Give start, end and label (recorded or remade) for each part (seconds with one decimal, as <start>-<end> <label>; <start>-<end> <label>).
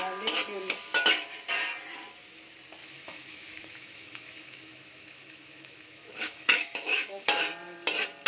0.0-2.8 recorded; 2.8-7.4 remade; 7.4-8.3 recorded